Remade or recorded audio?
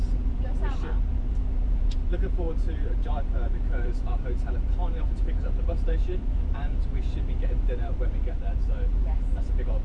remade